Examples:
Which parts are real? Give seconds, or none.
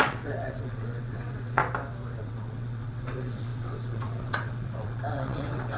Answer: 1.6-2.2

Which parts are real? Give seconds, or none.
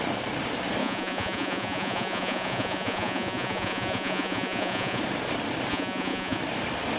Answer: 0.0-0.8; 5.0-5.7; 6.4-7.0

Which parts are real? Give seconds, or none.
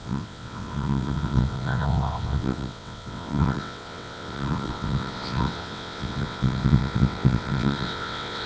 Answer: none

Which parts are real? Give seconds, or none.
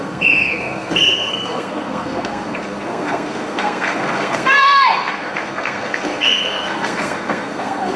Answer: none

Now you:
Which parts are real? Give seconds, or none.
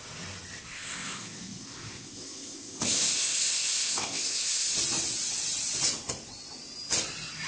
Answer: 0.0-0.6; 4.7-7.5